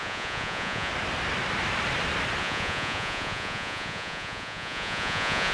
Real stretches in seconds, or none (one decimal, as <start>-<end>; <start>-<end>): 0.9-2.4